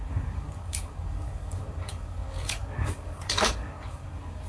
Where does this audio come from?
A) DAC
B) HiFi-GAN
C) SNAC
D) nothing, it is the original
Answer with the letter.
A